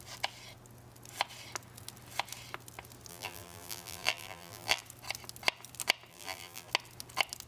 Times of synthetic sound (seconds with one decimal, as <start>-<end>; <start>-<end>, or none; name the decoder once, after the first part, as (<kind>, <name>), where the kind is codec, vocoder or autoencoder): 3.1-4.8 (vocoder, BigVGAN v2); 6.1-6.7